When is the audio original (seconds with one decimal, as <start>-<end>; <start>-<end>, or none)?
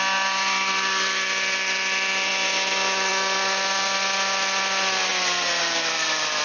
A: 0.0-6.4